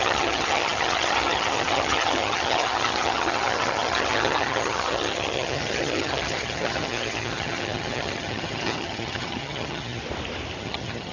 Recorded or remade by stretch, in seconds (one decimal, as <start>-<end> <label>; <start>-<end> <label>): 0.0-10.0 remade; 10.0-10.6 recorded; 10.6-11.1 remade